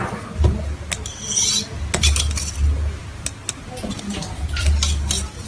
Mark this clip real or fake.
real